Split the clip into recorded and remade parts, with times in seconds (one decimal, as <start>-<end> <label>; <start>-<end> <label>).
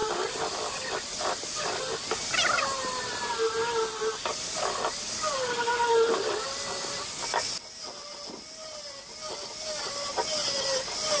0.0-11.2 recorded